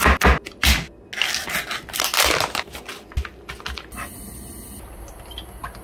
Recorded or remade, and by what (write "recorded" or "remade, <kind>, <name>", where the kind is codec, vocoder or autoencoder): recorded